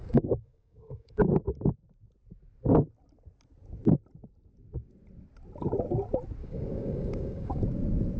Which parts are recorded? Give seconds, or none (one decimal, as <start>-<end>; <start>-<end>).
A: 1.3-6.4; 7.6-8.2